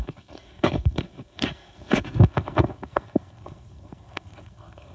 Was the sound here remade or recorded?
remade